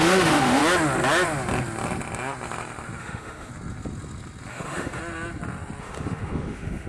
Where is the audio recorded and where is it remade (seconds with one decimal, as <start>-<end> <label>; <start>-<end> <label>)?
0.0-0.6 remade; 0.6-3.0 recorded; 3.0-3.5 remade; 3.5-4.5 recorded; 4.5-5.0 remade; 5.0-5.8 recorded; 5.8-6.9 remade